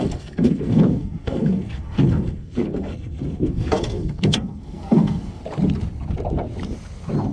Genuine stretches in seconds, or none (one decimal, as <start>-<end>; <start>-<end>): 5.4-7.3